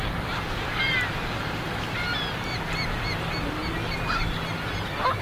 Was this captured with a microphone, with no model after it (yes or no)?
yes